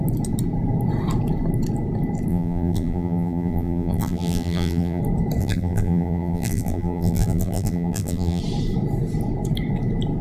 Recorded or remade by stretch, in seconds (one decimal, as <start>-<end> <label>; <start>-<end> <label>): 0.0-2.3 recorded; 2.3-5.0 remade; 5.0-5.4 recorded; 5.4-8.4 remade; 8.4-10.2 recorded